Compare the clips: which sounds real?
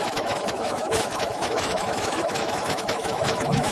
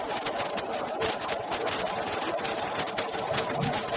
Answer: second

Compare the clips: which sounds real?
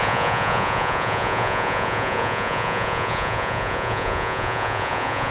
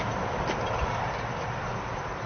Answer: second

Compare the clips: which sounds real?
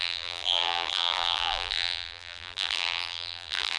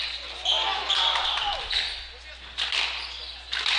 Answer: second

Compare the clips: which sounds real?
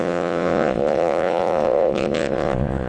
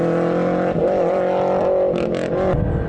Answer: second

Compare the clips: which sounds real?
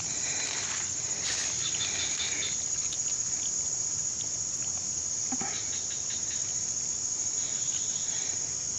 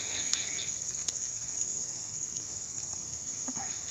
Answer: first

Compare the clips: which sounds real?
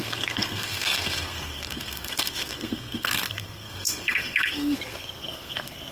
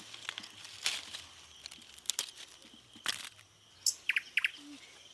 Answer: second